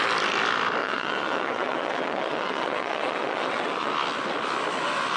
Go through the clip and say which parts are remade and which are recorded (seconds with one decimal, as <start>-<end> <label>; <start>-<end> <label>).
0.0-0.8 recorded; 0.8-3.9 remade; 3.9-5.2 recorded